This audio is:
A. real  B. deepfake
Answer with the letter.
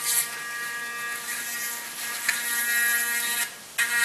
A